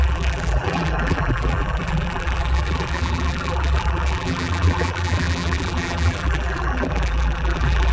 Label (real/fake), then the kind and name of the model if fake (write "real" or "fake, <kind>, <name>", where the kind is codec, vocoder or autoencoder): fake, vocoder, BigVGAN v2